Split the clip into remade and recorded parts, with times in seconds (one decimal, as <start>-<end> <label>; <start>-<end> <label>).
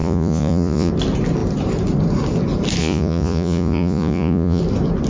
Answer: 0.0-0.9 remade; 0.9-2.8 recorded; 2.8-4.6 remade; 4.6-5.1 recorded